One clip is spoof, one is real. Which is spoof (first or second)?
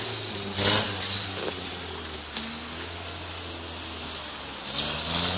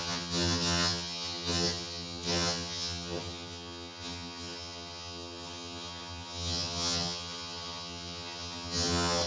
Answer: second